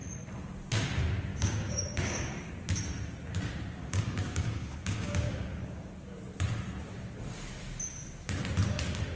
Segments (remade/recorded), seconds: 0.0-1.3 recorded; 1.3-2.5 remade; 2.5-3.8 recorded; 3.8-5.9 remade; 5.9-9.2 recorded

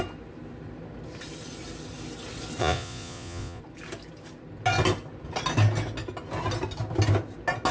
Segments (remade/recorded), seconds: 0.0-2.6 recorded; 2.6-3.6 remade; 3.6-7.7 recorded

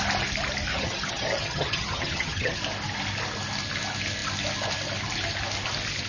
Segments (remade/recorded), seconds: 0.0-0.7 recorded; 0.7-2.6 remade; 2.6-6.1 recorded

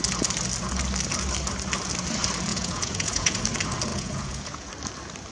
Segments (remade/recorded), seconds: 0.0-2.5 recorded; 2.5-3.4 remade; 3.4-3.9 recorded; 3.9-4.7 remade; 4.7-5.3 recorded

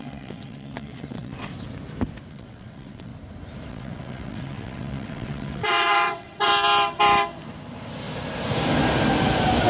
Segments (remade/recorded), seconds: 0.0-1.5 remade; 1.5-2.3 recorded; 2.3-3.1 remade; 3.1-3.7 recorded; 3.7-6.5 remade; 6.5-9.7 recorded

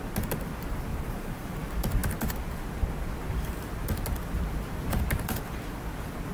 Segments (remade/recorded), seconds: 0.0-0.9 recorded; 0.9-1.5 remade; 1.5-6.3 recorded

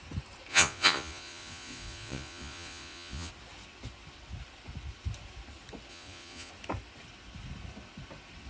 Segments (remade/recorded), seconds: 0.0-0.5 recorded; 0.5-3.3 remade; 3.3-5.9 recorded; 5.9-6.5 remade; 6.5-8.5 recorded